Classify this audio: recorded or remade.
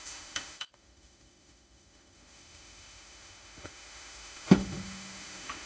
remade